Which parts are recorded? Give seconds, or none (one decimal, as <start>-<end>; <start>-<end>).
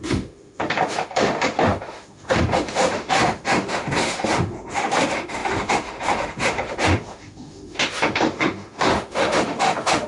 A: none